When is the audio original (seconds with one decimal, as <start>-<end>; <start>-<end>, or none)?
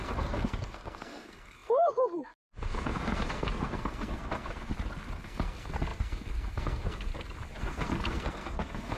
4.7-5.2; 7.1-7.6